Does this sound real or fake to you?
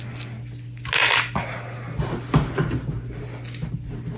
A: real